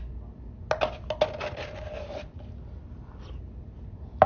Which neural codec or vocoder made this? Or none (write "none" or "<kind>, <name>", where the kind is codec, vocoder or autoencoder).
none